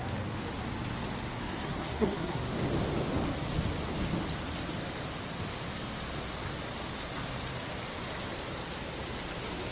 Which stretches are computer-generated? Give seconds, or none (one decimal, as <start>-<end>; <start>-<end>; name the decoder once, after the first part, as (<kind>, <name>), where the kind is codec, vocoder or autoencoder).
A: 1.3-2.4 (codec, SNAC)